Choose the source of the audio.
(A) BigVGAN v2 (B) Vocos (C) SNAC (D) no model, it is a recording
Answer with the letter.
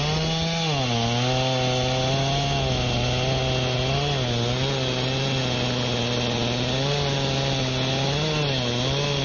D